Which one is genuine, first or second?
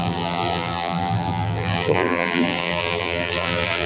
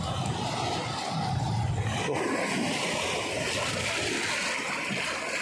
second